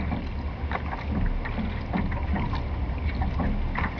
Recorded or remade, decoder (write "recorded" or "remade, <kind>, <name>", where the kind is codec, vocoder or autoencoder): recorded